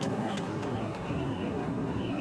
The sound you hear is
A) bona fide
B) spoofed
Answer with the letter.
B